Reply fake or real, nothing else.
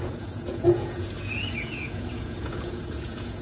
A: fake